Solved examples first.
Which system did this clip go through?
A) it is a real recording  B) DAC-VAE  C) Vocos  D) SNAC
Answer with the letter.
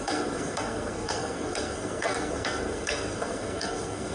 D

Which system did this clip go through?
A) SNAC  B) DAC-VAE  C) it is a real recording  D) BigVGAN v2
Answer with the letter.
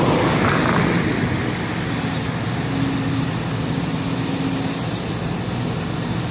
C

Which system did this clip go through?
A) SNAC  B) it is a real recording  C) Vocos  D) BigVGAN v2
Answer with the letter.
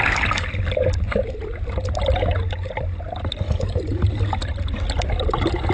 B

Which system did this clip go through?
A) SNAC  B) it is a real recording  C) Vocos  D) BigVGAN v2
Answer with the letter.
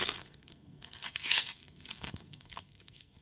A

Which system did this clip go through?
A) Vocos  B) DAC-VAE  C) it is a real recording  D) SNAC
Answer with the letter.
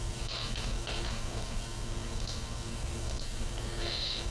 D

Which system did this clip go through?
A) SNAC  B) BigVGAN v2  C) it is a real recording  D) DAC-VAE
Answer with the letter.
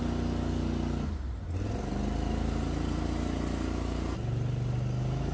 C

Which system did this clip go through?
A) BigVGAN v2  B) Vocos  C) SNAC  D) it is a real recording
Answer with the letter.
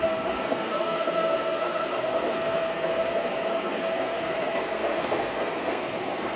C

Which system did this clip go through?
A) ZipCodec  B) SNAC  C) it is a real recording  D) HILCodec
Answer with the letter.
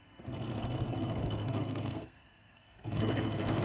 B